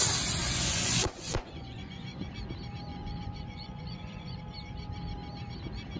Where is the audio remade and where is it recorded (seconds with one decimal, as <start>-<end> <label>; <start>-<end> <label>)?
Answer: 0.0-0.4 recorded; 0.4-2.3 remade; 2.3-2.9 recorded; 2.9-4.4 remade; 4.4-6.0 recorded